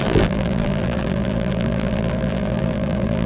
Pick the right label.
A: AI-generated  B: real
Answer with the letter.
A